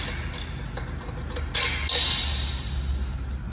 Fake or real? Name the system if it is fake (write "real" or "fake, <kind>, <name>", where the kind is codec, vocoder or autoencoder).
real